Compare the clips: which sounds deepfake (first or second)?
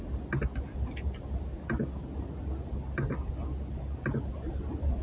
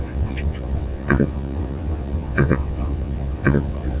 second